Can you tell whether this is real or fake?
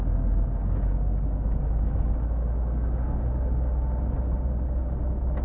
real